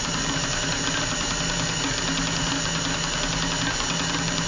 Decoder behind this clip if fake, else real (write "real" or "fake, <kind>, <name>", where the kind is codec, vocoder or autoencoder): real